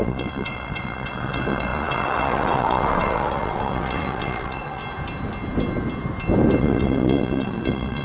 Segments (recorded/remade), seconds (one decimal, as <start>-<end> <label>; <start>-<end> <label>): 0.0-4.8 remade; 4.8-6.6 recorded; 6.6-8.0 remade